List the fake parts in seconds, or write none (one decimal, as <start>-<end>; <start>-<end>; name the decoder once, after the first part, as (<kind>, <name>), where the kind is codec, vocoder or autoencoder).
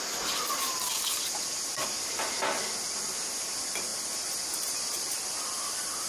none